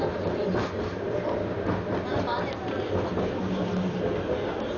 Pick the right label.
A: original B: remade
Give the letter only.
A